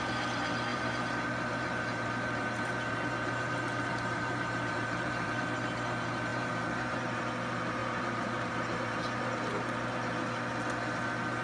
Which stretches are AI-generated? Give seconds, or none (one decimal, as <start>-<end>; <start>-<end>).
0.7-5.4; 6.3-7.2; 7.8-9.2